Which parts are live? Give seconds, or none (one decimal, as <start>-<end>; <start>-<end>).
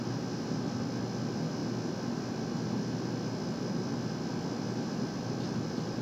0.0-6.0